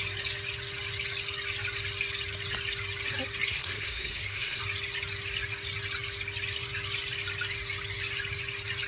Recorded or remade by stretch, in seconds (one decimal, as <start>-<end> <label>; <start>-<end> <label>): 0.0-3.5 recorded; 3.5-4.6 remade; 4.6-8.9 recorded